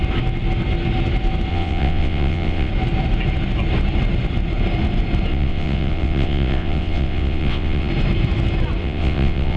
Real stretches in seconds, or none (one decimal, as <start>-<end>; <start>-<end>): 0.0-1.5; 2.7-5.3; 7.9-8.8